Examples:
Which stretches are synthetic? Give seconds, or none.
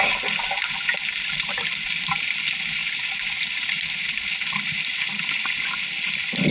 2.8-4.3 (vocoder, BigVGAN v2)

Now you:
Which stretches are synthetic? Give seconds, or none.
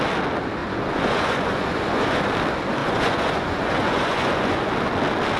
0.6-2.2 (vocoder, Vocos); 2.8-4.7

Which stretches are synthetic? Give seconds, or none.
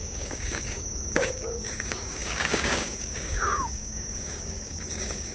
0.0-5.3 (codec, DAC)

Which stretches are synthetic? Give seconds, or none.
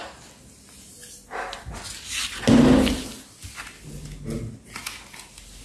none